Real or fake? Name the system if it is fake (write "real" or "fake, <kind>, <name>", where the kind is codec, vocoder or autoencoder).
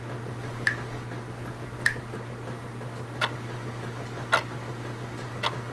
real